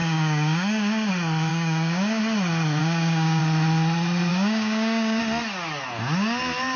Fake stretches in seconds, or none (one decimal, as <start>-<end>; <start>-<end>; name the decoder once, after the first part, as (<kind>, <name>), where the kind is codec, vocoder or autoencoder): 0.0-1.1 (codec, DAC); 1.5-2.2; 2.8-3.4; 4.3-5.2